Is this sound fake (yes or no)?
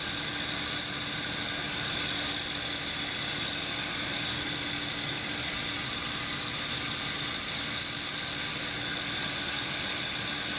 no